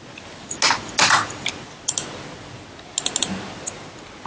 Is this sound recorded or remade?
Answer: recorded